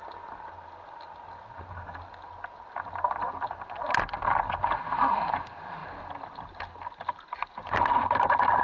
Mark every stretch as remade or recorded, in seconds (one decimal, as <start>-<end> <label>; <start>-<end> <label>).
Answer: 0.0-8.6 recorded